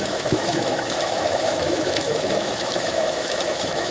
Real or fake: fake